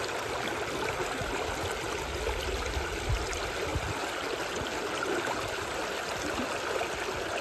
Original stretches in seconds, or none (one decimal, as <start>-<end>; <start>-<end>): 0.0-7.4